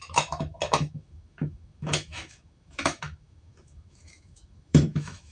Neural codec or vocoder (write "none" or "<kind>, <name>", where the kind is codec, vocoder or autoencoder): autoencoder, DAC-VAE